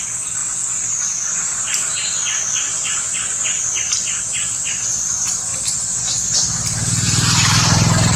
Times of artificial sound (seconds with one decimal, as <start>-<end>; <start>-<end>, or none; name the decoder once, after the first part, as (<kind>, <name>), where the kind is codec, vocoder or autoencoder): none

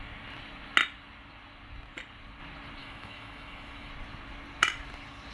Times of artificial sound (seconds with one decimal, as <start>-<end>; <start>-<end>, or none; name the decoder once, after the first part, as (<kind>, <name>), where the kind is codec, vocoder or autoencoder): 2.8-3.9 (autoencoder, DAC-VAE)

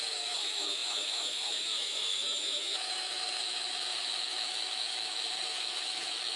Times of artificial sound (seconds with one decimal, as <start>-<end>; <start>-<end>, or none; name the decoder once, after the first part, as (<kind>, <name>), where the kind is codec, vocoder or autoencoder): 0.0-6.4 (autoencoder, DAC-VAE)

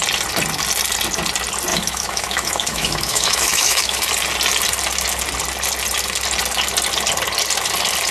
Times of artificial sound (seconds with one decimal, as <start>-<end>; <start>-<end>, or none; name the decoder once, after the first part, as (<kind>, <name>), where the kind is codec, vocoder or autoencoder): 1.7-4.1 (autoencoder, DAC-VAE)

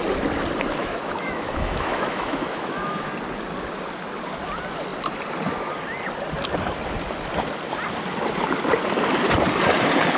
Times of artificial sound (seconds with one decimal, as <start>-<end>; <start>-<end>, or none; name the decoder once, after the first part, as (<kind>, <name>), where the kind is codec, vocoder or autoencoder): 0.8-3.1 (autoencoder, DAC-VAE)

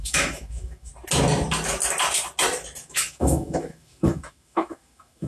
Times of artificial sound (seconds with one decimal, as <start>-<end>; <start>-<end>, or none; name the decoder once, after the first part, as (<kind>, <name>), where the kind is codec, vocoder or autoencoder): 0.0-0.9 (autoencoder, DAC-VAE); 2.8-5.3

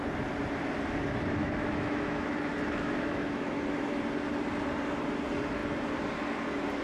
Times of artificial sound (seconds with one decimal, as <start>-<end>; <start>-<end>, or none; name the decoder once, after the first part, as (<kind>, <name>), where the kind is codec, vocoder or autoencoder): 1.4-4.0 (autoencoder, DAC-VAE)

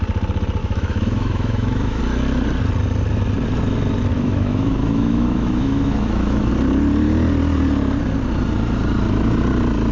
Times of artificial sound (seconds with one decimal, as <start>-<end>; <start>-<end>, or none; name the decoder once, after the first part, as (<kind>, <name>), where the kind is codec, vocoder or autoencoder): 0.6-2.0 (autoencoder, DAC-VAE); 4.1-6.5